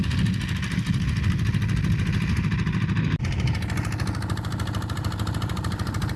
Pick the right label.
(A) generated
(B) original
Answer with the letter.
B